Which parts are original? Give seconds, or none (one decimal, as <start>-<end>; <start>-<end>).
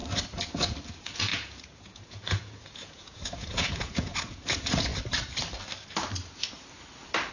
0.0-0.9; 4.9-7.3